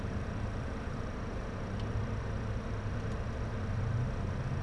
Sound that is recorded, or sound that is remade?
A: recorded